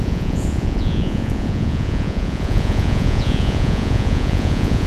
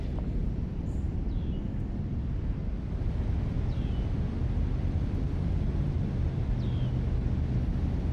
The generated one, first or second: first